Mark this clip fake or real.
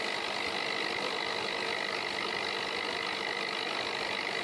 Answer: real